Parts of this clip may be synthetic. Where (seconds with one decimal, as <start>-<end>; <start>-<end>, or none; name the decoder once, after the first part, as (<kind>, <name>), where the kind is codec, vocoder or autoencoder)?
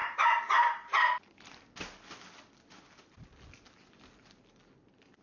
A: none